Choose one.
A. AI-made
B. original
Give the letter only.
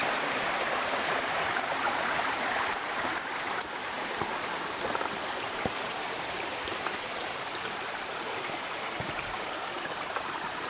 A